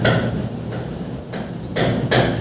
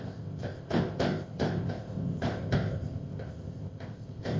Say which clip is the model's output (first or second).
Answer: second